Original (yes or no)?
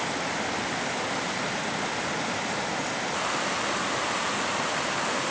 yes